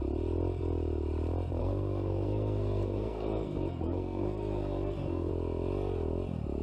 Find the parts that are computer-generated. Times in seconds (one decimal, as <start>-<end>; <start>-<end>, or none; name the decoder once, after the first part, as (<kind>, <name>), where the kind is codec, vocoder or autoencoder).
1.6-5.3 (codec, SNAC)